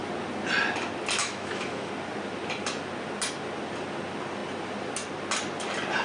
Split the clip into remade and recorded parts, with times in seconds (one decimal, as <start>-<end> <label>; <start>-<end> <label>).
0.0-1.2 recorded; 1.2-1.9 remade; 1.9-6.0 recorded